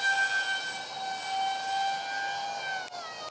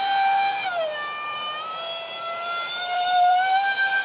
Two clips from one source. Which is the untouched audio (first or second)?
first